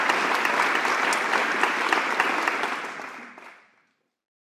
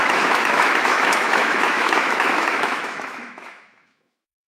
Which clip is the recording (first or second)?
first